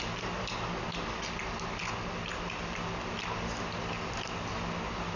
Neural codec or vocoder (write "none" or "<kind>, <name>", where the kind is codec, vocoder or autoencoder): none